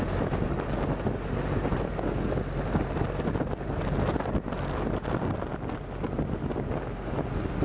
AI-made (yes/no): no